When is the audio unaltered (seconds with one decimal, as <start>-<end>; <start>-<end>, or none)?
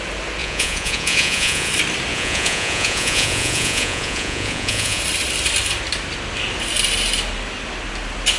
0.0-0.4; 1.7-2.1; 5.0-8.4